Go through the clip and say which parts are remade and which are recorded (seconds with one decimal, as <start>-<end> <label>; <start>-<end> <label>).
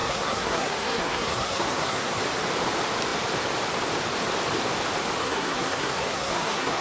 0.0-2.2 remade; 2.2-5.2 recorded; 5.2-6.8 remade